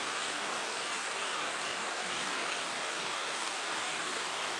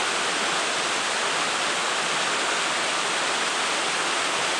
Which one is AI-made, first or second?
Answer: first